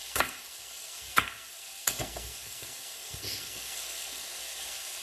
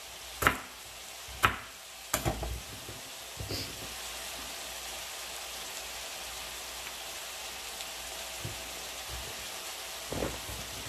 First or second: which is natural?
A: second